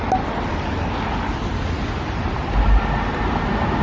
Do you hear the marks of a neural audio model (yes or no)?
no